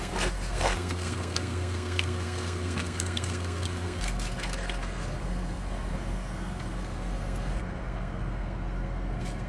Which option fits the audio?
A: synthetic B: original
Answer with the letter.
A